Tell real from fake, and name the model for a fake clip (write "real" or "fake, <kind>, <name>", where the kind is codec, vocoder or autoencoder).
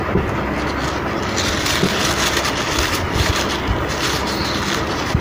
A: real